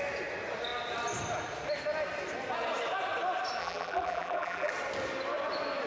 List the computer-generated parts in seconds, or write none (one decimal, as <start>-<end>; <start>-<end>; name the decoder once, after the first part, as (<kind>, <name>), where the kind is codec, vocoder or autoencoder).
3.6-4.7 (vocoder, BigVGAN v2)